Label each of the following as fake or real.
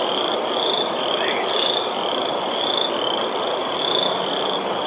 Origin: real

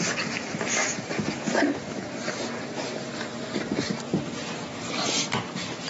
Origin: real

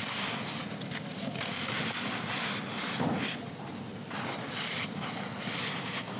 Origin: fake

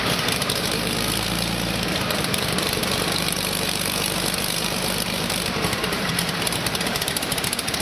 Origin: fake